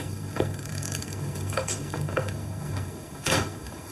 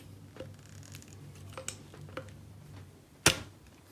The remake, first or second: first